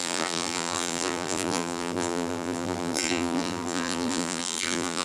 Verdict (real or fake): fake